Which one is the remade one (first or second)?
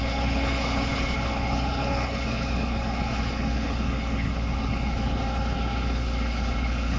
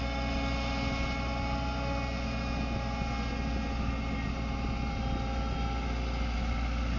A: first